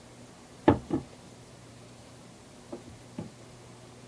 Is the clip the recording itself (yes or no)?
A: no